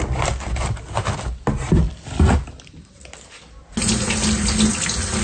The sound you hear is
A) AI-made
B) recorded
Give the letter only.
B